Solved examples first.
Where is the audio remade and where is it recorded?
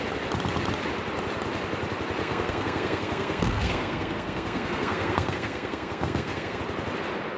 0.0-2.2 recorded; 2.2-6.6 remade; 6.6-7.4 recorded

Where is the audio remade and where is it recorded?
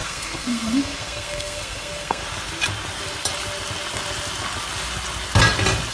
0.0-2.2 remade; 2.2-5.9 recorded